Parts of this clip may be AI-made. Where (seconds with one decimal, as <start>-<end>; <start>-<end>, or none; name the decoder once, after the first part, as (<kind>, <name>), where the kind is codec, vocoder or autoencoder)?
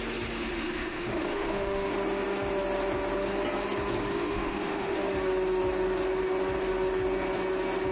0.4-1.9 (autoencoder, DAC-VAE); 4.1-5.0